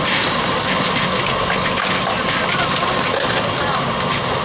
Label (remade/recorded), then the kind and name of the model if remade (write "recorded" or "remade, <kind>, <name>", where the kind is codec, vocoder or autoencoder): recorded